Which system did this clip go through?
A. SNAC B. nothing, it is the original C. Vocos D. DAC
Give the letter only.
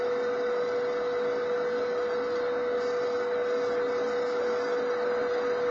B